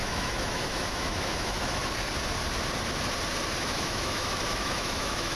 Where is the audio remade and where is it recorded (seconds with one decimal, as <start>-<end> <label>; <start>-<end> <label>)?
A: 0.0-1.8 remade; 1.8-3.6 recorded; 3.6-5.3 remade